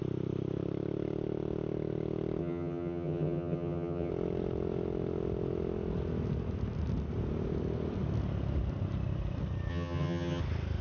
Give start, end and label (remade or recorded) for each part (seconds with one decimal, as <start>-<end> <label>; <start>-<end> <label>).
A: 0.0-2.4 recorded; 2.4-4.1 remade; 4.1-9.7 recorded; 9.7-10.4 remade; 10.4-10.8 recorded